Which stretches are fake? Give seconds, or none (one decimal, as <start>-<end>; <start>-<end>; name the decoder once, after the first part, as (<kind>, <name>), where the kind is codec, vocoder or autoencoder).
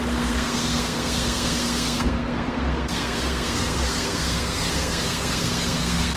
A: 0.0-6.2 (codec, SNAC)